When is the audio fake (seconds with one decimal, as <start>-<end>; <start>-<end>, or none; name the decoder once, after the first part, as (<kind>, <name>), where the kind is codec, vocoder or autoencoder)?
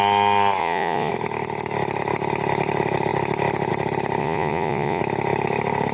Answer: 0.6-1.1 (vocoder, Vocos); 4.2-5.0